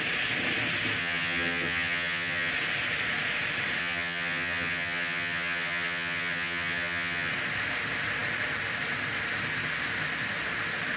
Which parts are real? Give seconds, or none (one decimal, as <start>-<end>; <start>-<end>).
0.0-1.0; 2.5-3.8; 7.3-11.0